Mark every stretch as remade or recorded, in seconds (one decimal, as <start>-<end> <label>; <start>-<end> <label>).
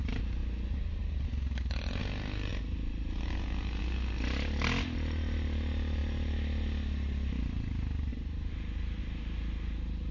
0.0-10.1 recorded